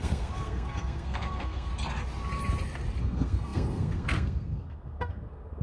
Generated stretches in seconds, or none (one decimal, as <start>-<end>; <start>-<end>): 0.0-1.7; 3.0-5.6